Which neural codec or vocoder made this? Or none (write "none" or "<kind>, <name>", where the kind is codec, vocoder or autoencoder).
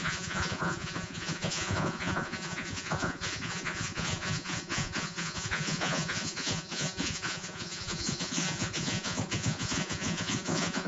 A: vocoder, Vocos